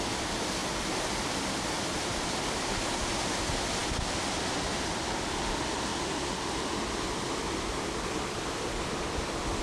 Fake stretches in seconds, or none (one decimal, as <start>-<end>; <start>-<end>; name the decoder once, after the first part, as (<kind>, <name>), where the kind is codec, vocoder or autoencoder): none